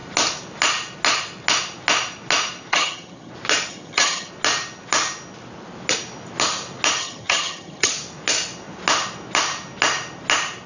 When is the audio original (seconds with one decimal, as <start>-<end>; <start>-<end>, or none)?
0.0-2.7; 3.3-3.7; 4.3-7.0; 7.9-10.7